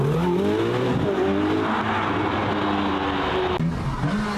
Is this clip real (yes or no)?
yes